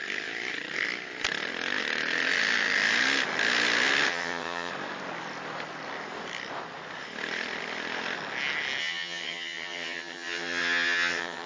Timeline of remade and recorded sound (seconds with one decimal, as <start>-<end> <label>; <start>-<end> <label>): 0.0-4.1 recorded; 4.1-4.7 remade; 4.7-8.8 recorded; 8.8-11.5 remade